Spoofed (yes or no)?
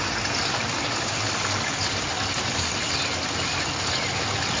no